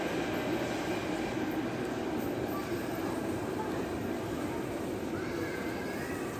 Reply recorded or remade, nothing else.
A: recorded